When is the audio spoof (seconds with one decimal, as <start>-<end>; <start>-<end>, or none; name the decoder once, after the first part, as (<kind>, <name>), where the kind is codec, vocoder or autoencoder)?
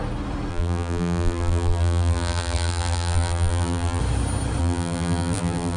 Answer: 0.5-4.0 (vocoder, BigVGAN v2); 4.6-5.8